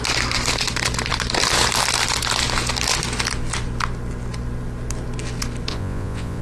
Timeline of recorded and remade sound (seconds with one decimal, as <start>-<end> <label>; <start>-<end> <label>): 0.0-5.7 recorded; 5.7-6.4 remade